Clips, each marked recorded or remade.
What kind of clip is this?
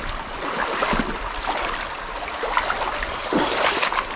recorded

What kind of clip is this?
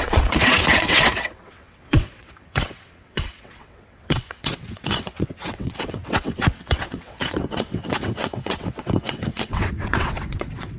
remade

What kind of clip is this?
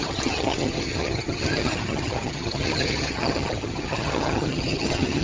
remade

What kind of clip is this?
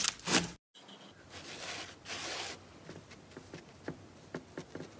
recorded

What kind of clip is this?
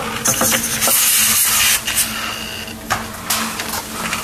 recorded